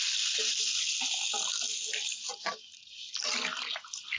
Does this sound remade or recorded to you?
recorded